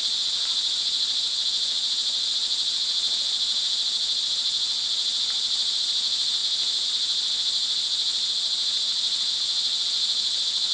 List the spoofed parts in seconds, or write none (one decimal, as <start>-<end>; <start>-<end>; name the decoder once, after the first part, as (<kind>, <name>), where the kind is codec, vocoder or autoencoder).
0.0-6.4 (vocoder, BigVGAN v2); 6.9-10.7